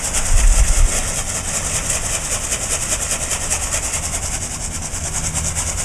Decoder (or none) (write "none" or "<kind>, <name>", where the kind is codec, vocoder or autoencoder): none